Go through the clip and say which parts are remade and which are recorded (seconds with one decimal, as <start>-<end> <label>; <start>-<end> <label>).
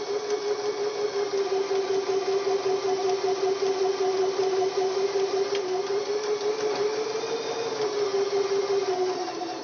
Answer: 0.0-9.6 recorded